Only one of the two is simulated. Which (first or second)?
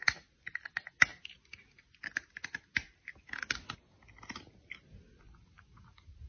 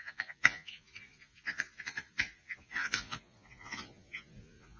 second